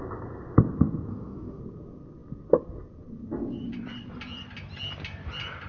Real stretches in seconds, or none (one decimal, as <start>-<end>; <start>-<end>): 0.0-1.1; 1.6-5.7